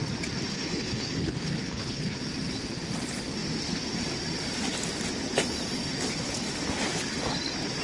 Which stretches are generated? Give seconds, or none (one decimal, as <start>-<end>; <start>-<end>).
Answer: 0.5-2.2